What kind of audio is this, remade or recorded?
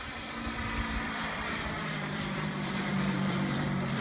remade